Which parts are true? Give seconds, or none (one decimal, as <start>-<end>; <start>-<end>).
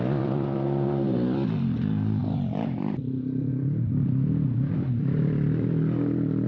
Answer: none